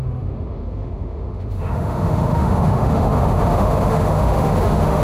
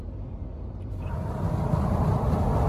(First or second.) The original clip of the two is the second